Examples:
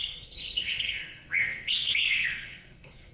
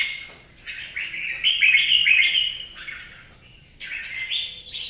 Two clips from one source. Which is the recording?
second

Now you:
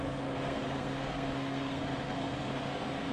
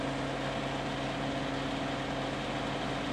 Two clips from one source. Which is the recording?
second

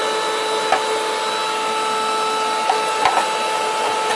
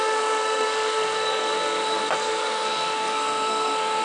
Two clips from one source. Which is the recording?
first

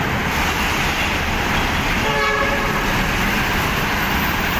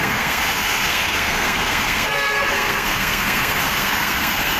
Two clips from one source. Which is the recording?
first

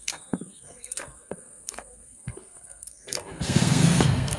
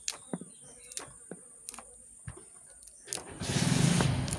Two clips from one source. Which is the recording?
second